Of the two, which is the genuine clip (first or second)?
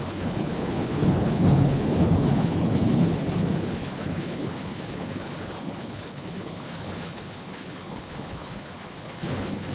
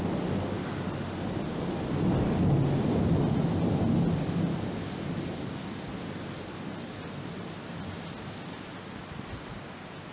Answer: second